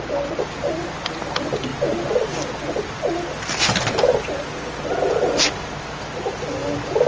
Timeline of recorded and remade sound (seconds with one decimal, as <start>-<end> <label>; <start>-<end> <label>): 0.0-7.1 recorded